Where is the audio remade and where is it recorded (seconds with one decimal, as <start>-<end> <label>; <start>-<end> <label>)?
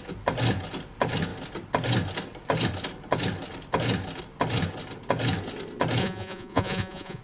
0.0-6.0 recorded; 6.0-7.2 remade